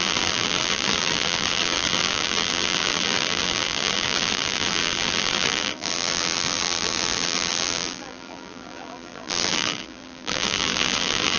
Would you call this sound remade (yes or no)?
yes